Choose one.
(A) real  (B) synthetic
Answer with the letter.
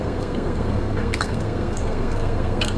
B